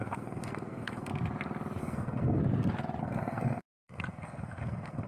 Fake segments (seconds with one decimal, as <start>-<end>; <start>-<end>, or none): 0.0-1.1; 1.8-2.4; 3.0-5.1